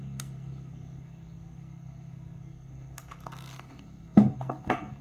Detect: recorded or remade remade